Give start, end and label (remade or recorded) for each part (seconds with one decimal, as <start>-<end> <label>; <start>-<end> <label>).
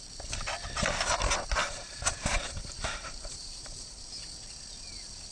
0.0-1.6 recorded; 1.6-4.1 remade; 4.1-5.3 recorded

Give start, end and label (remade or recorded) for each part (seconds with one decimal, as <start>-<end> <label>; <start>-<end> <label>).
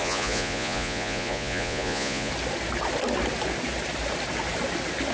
0.0-2.3 remade; 2.3-5.1 recorded